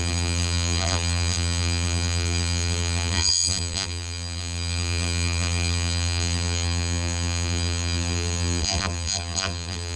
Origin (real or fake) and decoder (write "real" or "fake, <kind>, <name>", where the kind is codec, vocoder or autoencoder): fake, vocoder, BigVGAN v2